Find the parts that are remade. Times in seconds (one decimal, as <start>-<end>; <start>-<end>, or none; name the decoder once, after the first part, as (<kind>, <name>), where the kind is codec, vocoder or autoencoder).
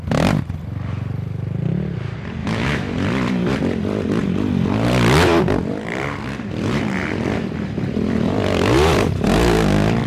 2.4-2.9 (autoencoder, DAC-VAE)